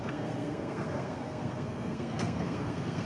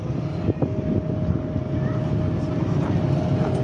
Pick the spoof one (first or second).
first